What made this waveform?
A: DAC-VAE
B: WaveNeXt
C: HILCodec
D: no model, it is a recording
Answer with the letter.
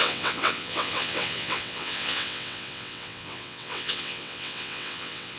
B